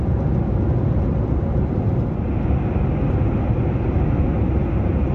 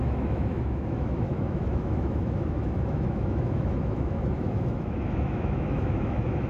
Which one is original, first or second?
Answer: first